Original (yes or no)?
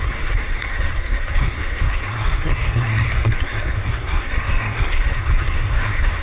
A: no